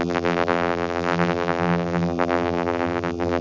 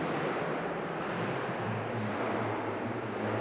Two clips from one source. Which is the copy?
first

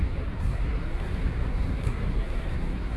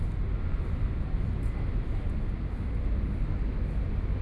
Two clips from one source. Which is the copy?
first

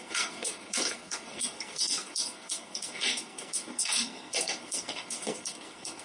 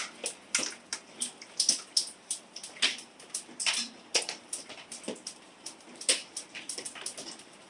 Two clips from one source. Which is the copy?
first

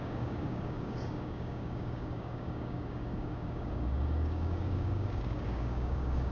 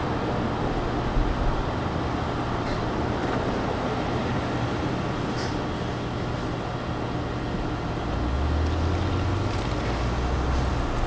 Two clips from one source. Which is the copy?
first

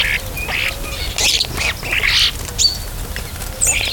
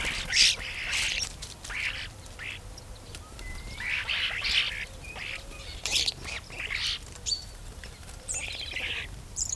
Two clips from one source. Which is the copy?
second